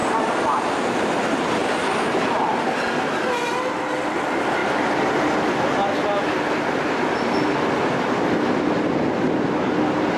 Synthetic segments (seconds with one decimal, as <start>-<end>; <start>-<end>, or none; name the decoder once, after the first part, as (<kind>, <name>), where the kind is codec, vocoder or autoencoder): none

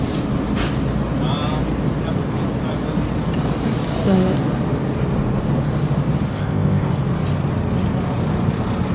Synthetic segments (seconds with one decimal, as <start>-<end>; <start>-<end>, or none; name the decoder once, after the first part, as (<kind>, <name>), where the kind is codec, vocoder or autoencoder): 6.3-6.9 (codec, ZipCodec)

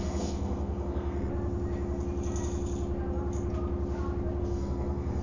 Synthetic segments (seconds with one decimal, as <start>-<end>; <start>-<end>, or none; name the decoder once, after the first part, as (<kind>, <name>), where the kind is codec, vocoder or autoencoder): 0.0-1.3 (codec, SNAC); 4.4-5.2

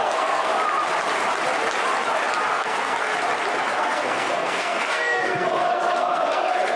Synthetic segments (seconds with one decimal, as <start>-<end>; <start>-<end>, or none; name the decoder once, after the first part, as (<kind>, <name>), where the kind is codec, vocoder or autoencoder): 0.0-0.5 (codec, SNAC); 2.5-3.1; 3.7-6.8

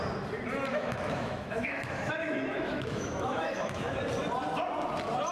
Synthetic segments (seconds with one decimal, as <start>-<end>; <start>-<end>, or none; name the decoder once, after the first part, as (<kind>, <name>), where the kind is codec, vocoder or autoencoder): 0.7-3.9 (autoencoder, DAC-VAE)